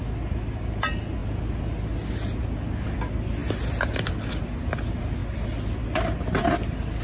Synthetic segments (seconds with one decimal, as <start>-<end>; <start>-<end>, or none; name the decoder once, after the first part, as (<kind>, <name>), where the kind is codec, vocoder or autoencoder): none